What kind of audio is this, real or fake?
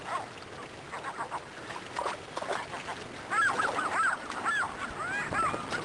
real